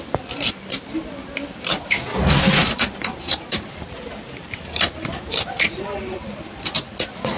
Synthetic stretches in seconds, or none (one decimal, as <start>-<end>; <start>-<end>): 2.6-6.8